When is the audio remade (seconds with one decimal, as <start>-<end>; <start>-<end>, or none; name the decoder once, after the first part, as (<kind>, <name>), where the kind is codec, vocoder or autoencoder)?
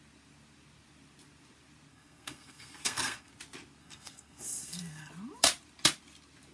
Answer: 1.9-3.3 (codec, SNAC); 3.8-5.1